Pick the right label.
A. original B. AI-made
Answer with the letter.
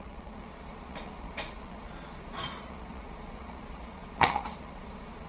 B